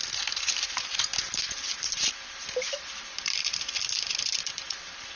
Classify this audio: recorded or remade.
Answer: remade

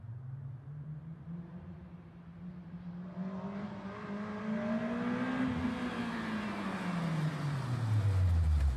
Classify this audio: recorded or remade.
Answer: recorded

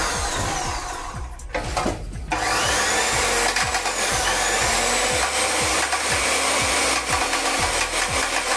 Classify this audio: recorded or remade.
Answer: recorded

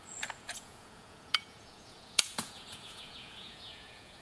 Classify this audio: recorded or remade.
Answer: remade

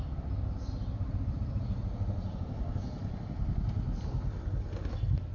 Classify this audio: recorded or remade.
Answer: recorded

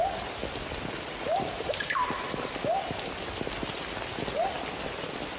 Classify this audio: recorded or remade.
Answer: recorded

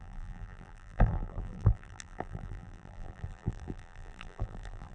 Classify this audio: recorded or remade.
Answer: remade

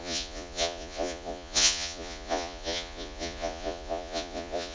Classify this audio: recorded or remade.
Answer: remade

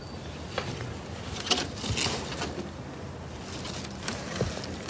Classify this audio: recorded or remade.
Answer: recorded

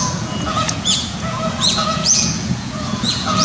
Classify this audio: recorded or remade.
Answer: remade